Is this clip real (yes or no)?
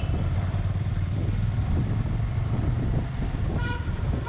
no